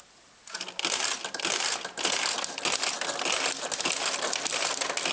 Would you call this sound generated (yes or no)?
no